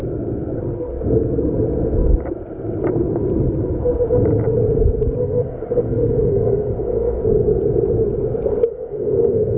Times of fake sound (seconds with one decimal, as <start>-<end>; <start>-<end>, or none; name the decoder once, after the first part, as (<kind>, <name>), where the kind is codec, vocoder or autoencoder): 5.2-7.2 (codec, SNAC); 8.7-9.6